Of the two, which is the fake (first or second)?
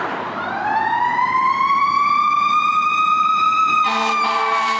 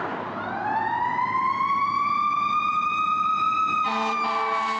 first